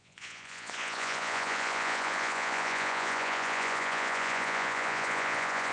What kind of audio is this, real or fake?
fake